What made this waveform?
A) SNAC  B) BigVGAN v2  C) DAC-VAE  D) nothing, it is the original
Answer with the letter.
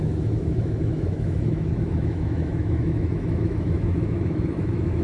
C